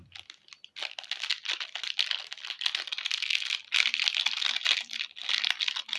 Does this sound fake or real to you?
real